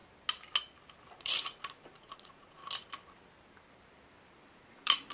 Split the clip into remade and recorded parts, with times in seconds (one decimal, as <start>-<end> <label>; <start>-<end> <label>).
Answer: 0.0-1.1 recorded; 1.1-2.6 remade; 2.6-4.4 recorded; 4.4-5.1 remade

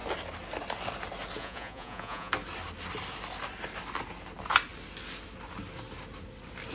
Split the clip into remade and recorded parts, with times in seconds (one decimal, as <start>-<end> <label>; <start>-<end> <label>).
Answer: 0.0-1.4 recorded; 1.4-2.3 remade; 2.3-6.7 recorded

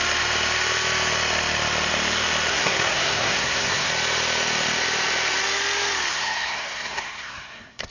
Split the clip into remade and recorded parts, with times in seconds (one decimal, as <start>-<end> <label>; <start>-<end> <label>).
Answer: 0.0-2.5 recorded; 2.5-3.9 remade; 3.9-6.1 recorded; 6.1-7.9 remade